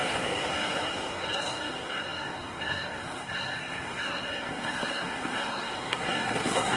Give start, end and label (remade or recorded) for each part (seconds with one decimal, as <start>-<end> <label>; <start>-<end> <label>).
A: 0.0-6.8 remade